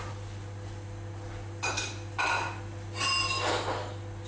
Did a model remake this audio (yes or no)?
no